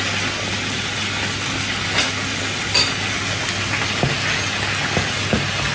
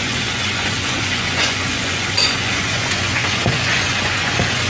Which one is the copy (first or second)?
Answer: second